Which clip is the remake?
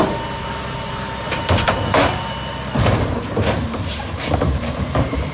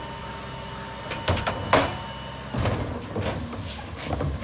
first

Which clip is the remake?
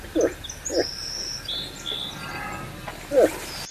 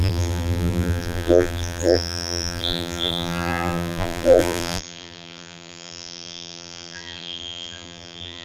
second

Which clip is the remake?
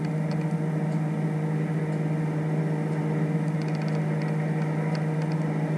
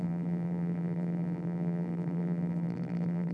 second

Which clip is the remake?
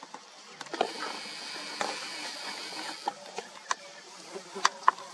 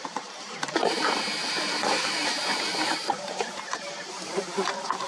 second